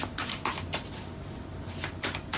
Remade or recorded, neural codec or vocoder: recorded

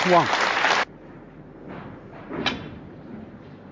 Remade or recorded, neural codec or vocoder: recorded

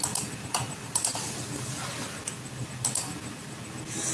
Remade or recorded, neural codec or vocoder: recorded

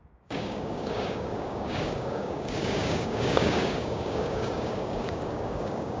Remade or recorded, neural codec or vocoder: remade, codec, DAC